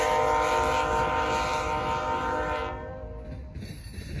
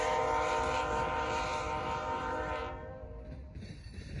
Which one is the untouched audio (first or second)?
first